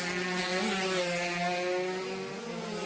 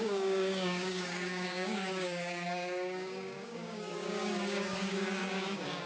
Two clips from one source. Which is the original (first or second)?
first